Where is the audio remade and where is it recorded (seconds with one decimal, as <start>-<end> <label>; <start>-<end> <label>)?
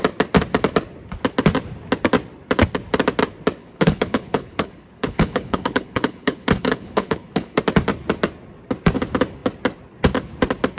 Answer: 0.0-3.6 recorded; 3.6-7.6 remade; 7.6-10.8 recorded